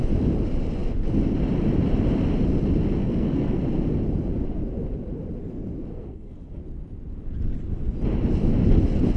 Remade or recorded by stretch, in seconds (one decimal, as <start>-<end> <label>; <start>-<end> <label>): 0.0-3.0 recorded; 3.0-3.6 remade; 3.6-5.9 recorded; 5.9-6.6 remade; 6.6-9.2 recorded